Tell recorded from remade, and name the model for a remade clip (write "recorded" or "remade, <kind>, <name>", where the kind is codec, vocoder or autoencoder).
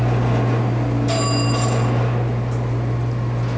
recorded